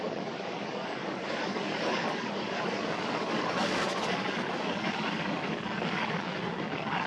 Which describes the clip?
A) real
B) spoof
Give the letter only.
B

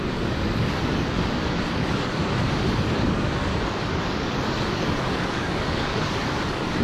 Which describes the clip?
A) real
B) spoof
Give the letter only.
B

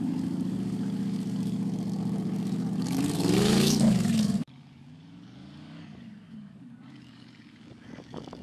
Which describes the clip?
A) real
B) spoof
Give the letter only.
B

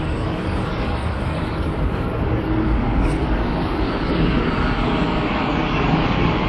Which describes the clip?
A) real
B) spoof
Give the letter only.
B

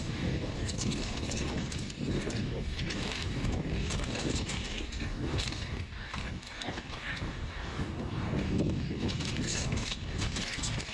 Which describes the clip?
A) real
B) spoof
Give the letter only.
B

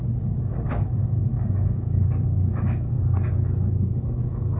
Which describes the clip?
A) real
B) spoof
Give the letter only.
B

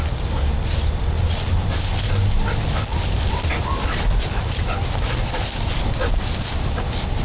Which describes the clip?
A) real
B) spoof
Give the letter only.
A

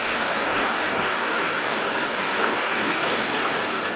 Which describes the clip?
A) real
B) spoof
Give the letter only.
B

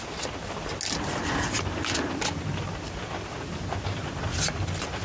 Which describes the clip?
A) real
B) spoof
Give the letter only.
A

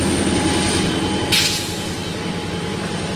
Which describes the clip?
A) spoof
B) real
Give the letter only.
B